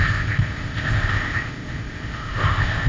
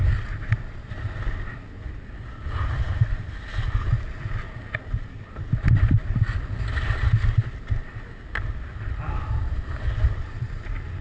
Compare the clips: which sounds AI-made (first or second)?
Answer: first